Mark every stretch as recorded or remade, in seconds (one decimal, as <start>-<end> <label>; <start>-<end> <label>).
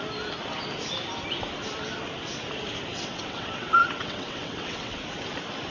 0.0-2.9 recorded; 2.9-5.0 remade; 5.0-5.7 recorded